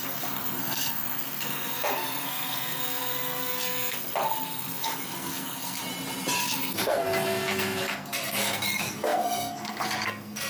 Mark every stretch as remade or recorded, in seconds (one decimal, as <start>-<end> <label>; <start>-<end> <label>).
0.0-5.8 remade; 5.8-6.4 recorded; 6.4-10.5 remade